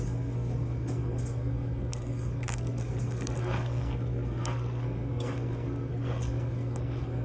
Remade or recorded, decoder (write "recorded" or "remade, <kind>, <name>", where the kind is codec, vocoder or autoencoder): remade, codec, SNAC